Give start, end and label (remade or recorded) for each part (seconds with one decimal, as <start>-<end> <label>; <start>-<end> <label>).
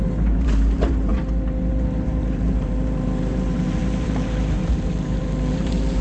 0.0-1.1 remade; 1.1-1.7 recorded; 1.7-6.0 remade